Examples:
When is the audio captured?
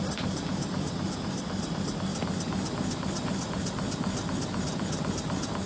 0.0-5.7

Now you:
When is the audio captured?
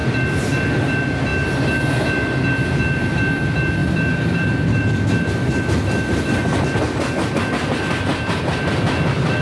0.0-3.8; 7.4-8.1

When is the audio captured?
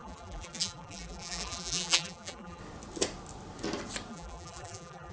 2.6-4.1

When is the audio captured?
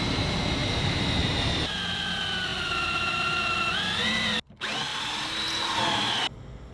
0.0-0.6; 1.8-2.5; 3.6-4.9; 6.1-6.7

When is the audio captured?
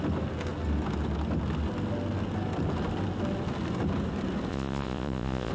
0.0-4.5